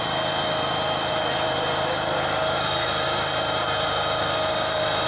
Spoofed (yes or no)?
yes